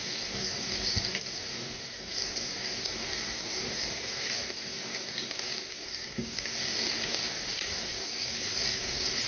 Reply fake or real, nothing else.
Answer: fake